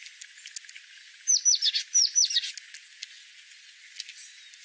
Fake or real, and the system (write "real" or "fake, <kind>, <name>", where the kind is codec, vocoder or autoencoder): real